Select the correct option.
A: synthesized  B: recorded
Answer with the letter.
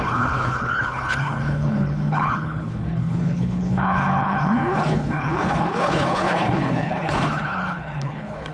A